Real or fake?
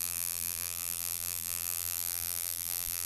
fake